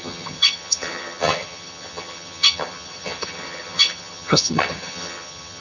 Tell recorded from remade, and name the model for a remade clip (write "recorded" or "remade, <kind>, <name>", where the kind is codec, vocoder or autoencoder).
remade, vocoder, HiFi-GAN